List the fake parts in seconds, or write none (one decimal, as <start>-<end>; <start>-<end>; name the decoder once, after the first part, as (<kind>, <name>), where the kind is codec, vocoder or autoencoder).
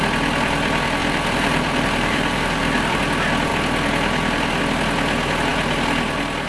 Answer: 1.0-3.0 (vocoder, BigVGAN v2)